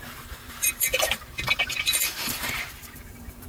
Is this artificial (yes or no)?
yes